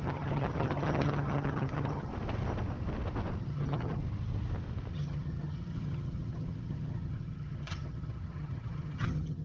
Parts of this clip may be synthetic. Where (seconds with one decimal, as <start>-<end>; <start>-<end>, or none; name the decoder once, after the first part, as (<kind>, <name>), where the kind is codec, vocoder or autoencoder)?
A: 0.0-2.1 (vocoder, HiFi-GAN); 3.4-4.0; 4.9-9.4